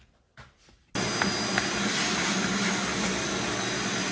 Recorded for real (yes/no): yes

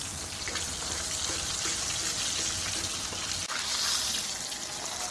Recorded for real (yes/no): yes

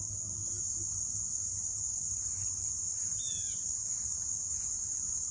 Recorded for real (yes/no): yes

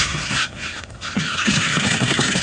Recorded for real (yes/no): no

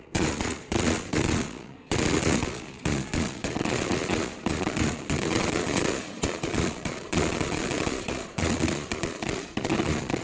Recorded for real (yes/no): no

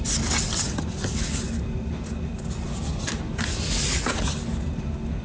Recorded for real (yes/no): yes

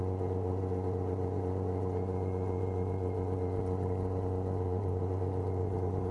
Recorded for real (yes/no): no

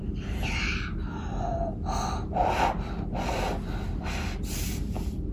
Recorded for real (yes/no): yes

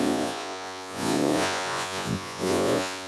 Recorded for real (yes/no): no